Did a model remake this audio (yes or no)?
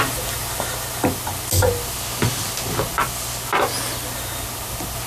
no